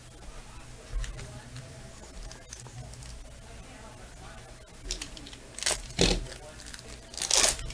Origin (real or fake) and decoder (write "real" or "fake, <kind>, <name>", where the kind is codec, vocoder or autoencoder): real